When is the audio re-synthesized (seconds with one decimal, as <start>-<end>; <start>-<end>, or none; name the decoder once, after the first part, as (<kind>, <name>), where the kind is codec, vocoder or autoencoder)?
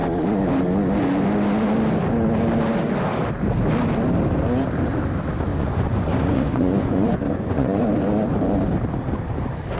5.5-7.8 (vocoder, Vocos)